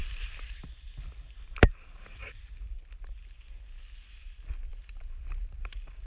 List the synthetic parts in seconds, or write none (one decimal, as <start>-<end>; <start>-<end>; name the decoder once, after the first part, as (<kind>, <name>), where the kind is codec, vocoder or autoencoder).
0.0-0.9 (vocoder, BigVGAN v2); 1.6-2.7; 4.7-6.1